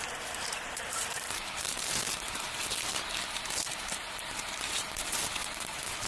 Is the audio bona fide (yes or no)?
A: no